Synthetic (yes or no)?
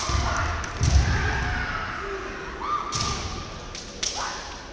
no